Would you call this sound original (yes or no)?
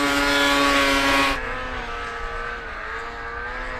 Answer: yes